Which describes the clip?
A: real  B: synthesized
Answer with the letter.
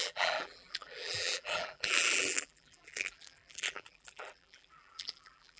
B